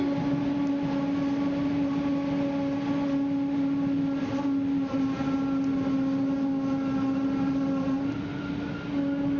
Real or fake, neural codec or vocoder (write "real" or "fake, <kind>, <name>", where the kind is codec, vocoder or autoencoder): real